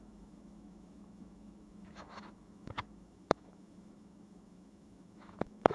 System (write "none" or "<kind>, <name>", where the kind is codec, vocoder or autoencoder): autoencoder, DAC-VAE